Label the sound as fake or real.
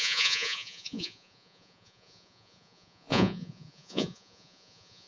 fake